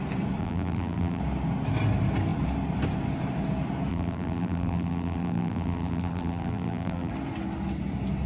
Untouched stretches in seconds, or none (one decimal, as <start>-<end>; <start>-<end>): 0.0-0.4; 1.2-3.9; 7.1-8.3